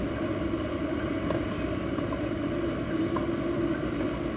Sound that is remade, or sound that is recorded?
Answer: recorded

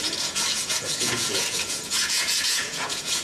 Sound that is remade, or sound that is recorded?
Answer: remade